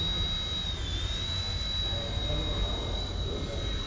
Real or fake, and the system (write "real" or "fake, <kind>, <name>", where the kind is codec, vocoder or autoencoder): real